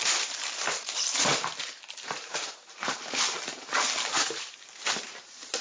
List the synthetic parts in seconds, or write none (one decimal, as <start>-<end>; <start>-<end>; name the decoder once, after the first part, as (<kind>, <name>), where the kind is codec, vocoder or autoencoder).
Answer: 0.0-1.3 (vocoder, BigVGAN v2); 1.9-5.6